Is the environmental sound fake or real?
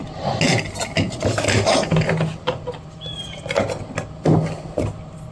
real